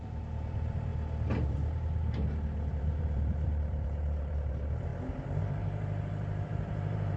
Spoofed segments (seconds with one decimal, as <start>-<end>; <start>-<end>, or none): 0.0-0.9; 2.7-4.9; 5.4-7.2